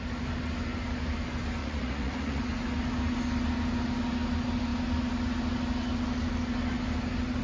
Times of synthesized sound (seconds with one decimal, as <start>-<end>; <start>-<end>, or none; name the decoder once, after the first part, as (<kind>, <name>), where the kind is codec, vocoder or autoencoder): 1.6-2.4 (vocoder, Vocos)